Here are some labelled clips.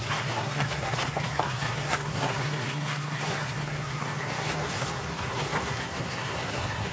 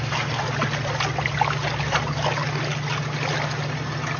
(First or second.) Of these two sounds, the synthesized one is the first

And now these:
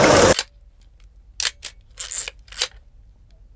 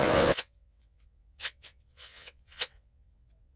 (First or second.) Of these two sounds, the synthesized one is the second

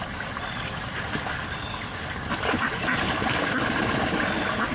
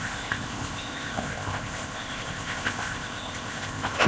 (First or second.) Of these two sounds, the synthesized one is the second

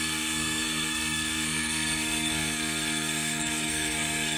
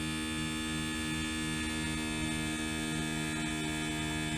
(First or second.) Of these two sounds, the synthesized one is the first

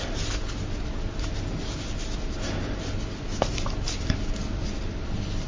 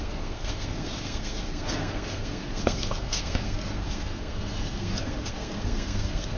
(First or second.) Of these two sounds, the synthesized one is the second